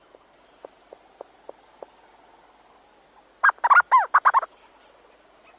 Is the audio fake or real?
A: real